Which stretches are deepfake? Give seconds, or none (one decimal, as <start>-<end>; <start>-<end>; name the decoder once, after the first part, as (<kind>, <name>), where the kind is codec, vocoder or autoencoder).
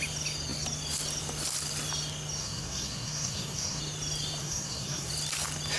2.4-3.8 (codec, SNAC); 4.4-5.1